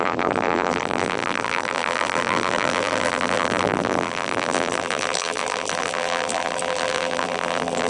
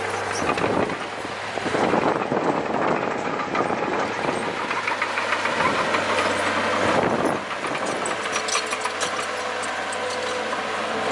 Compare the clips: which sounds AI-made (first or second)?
first